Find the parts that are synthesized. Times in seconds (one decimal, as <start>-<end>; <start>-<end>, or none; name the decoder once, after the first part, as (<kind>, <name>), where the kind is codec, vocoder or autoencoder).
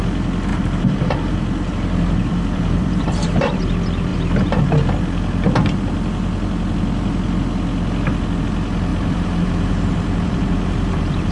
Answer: 0.5-3.6 (vocoder, BigVGAN v2); 8.9-11.3